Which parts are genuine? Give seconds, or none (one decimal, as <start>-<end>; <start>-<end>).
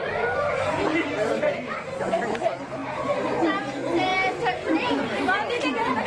0.0-6.1